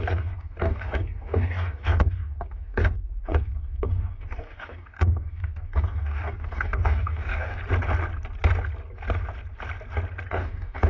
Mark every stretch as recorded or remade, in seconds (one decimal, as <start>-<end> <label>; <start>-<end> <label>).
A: 0.0-7.6 remade; 7.6-10.3 recorded; 10.3-10.9 remade